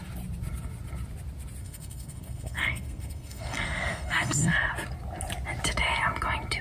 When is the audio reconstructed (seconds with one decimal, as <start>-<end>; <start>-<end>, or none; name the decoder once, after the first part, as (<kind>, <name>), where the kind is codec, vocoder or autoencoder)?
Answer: 1.6-4.7 (codec, SNAC)